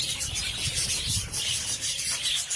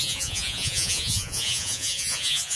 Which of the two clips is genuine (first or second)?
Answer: first